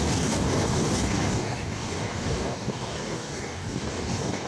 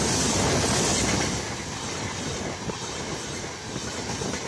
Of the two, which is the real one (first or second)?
second